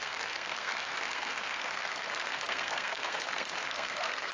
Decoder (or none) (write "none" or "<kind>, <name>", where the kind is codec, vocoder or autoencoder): codec, SNAC